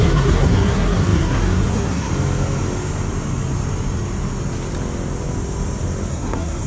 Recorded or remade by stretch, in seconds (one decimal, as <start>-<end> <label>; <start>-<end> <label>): 0.0-2.1 remade; 2.1-6.1 recorded; 6.1-6.7 remade